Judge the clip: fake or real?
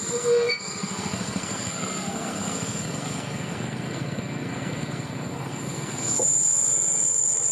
fake